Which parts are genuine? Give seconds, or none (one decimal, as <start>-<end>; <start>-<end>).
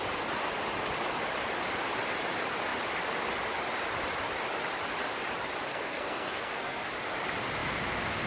0.0-5.7; 6.9-8.3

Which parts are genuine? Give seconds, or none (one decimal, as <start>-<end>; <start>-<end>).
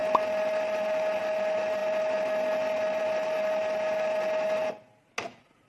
0.0-5.7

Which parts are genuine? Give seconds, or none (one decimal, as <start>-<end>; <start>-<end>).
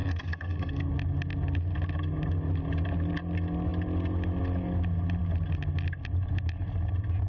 0.9-7.3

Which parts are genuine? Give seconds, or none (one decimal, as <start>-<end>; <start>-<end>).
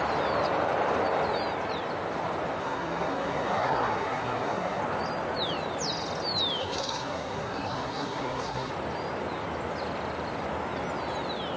0.0-2.6; 4.8-6.6; 8.7-11.6